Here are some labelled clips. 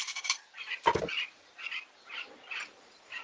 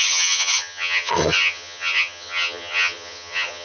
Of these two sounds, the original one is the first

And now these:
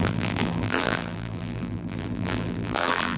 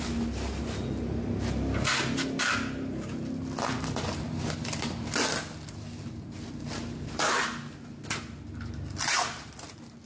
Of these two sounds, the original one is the second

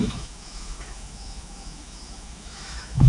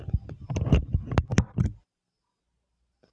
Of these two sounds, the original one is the second